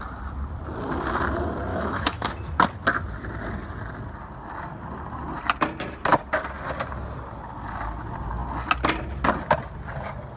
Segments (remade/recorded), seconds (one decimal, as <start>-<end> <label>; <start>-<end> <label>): 0.0-1.7 recorded; 1.7-2.3 remade; 2.3-10.4 recorded